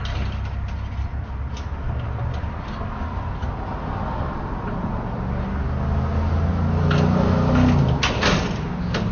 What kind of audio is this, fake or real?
real